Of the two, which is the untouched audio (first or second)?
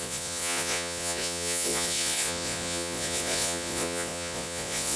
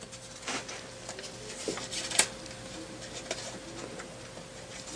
second